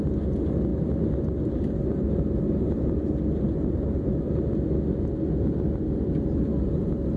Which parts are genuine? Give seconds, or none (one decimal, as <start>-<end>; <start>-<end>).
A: 0.0-7.2